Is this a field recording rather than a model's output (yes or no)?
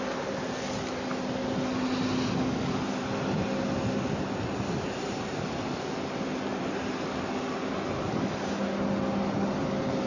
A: yes